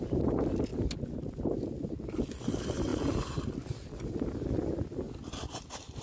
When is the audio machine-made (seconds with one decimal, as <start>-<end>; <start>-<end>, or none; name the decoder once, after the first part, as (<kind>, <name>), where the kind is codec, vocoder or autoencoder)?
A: 0.0-0.7 (vocoder, BigVGAN v2); 1.9-2.9